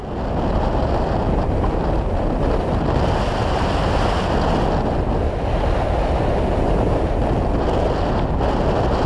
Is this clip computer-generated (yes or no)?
no